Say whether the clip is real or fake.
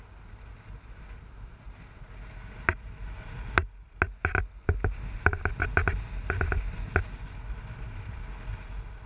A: real